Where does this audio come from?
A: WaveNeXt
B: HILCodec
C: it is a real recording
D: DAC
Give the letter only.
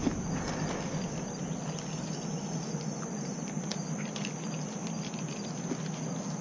C